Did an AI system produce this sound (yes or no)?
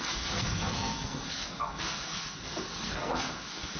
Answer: yes